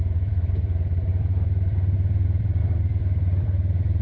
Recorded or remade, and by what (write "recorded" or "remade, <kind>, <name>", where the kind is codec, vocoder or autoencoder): remade, vocoder, BigVGAN v2